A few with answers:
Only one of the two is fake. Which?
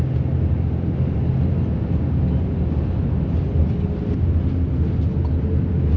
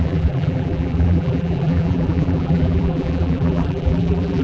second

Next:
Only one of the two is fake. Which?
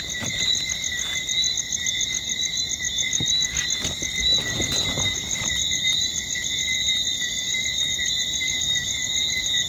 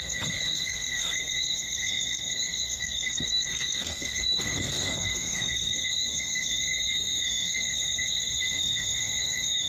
second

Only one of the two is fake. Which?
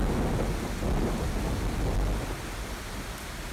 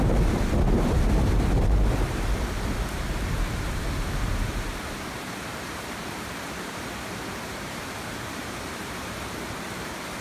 second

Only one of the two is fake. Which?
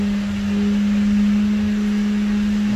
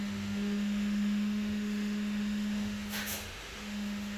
second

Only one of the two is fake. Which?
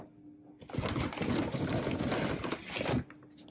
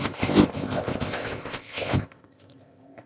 second